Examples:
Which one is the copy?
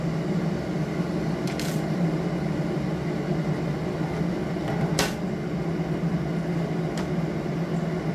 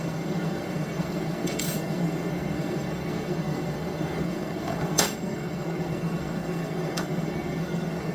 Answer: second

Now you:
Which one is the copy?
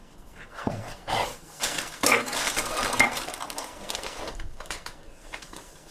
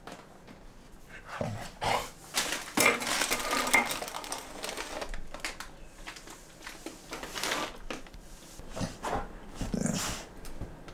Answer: first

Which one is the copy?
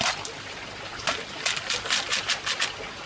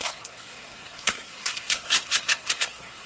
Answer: second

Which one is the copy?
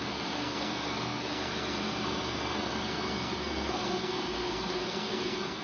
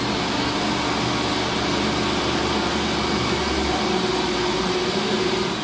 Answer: first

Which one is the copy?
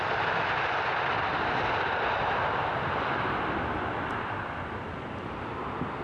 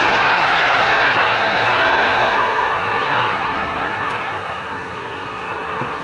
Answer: second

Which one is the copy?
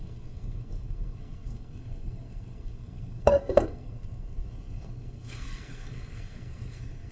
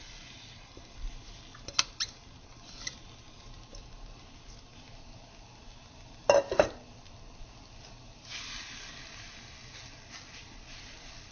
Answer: first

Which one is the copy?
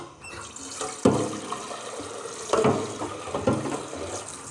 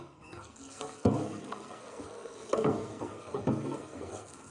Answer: second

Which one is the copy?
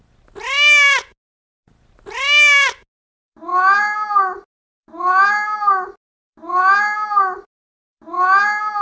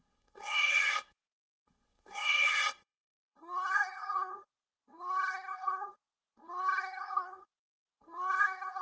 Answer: second